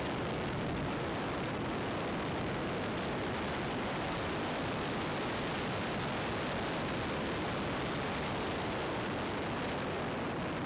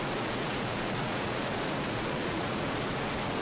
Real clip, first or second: first